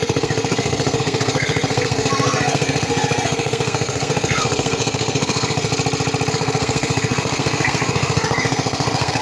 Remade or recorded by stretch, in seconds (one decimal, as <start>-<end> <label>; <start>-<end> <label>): 0.0-5.7 remade; 5.7-6.3 recorded; 6.3-9.2 remade